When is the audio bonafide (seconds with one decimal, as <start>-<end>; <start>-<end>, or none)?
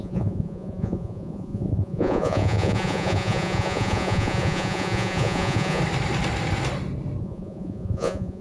5.8-7.2